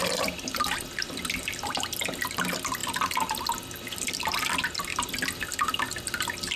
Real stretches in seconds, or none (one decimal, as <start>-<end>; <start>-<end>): 4.9-6.6